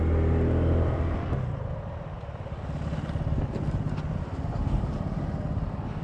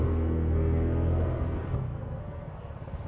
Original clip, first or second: first